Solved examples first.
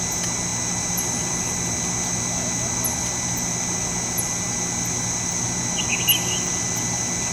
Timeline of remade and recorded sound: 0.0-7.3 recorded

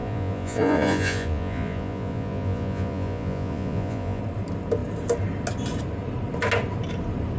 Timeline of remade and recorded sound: 0.0-4.2 remade; 4.2-7.4 recorded

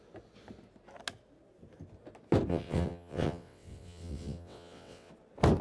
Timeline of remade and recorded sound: 0.0-2.5 recorded; 2.5-5.1 remade; 5.1-5.6 recorded